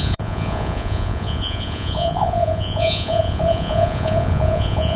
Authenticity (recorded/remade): remade